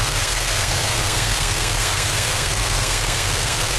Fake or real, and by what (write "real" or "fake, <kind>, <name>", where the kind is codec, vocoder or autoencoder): fake, codec, SNAC